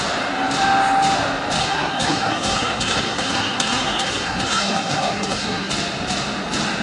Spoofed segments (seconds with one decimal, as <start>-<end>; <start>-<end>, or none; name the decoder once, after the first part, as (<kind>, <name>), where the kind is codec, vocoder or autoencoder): 1.6-5.7 (codec, SNAC)